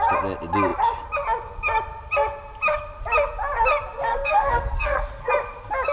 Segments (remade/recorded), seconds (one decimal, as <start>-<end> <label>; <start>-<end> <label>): 0.0-4.1 recorded; 4.1-5.3 remade; 5.3-5.9 recorded